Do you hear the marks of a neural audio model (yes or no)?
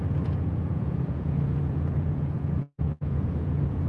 yes